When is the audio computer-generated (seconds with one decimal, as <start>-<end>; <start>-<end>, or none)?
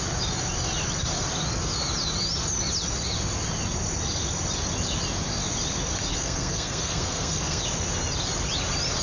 6.1-7.6